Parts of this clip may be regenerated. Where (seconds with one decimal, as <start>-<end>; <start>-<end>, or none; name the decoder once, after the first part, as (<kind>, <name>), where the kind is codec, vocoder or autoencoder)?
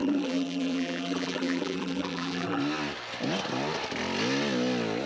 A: 0.0-2.6 (vocoder, BigVGAN v2)